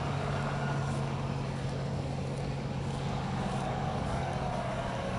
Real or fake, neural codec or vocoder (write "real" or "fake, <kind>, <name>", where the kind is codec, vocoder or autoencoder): fake, codec, DAC